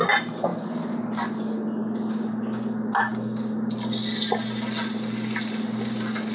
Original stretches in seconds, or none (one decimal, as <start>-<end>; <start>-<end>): 0.0-6.3